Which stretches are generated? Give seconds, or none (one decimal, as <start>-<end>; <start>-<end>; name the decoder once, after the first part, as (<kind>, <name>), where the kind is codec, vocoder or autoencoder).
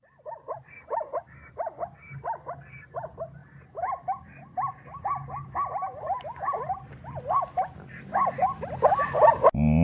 none